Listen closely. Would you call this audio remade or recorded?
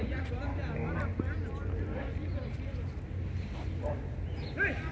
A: recorded